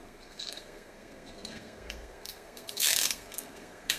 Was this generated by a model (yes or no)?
yes